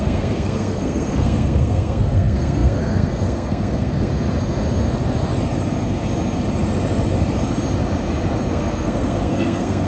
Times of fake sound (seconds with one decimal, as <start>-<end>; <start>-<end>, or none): 0.0-4.1; 8.5-9.9